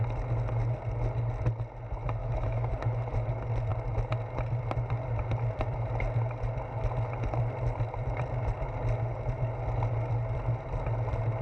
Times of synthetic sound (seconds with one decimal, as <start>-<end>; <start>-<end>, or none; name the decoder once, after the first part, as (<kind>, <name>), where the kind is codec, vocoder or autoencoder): 2.2-2.7 (autoencoder, DAC-VAE)